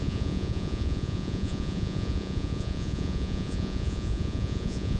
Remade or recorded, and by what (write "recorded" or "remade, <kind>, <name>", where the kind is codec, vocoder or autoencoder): remade, vocoder, Vocos